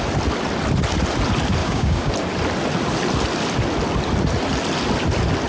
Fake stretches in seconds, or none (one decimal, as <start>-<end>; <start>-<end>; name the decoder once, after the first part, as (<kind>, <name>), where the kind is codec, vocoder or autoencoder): 1.6-2.1 (codec, DAC)

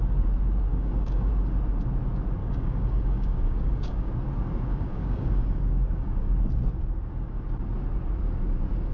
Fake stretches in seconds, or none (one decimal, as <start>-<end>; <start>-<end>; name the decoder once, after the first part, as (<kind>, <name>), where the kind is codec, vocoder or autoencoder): 0.7-1.3 (codec, DAC); 2.4-4.1; 4.7-6.3

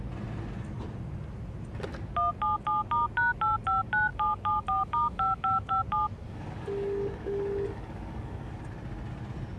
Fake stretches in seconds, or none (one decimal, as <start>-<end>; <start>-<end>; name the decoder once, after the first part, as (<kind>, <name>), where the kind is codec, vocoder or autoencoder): 4.1-5.7 (codec, DAC); 6.2-8.6

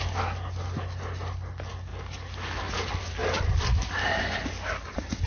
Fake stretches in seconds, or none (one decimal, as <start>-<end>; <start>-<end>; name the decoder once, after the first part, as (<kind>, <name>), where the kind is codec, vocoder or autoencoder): none

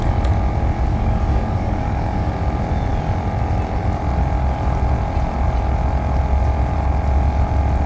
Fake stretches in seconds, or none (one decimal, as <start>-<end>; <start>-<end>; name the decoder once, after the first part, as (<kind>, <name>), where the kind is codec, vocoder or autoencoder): 0.9-2.3 (codec, DAC)

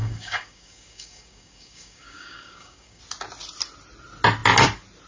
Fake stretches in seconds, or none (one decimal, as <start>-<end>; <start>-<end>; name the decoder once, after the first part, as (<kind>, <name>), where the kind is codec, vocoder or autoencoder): 0.0-3.0 (codec, DAC)

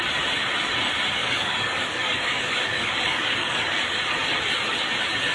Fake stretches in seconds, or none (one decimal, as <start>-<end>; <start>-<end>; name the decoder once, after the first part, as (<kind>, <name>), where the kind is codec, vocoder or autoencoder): 1.2-3.8 (codec, DAC)